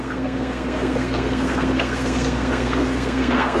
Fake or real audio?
fake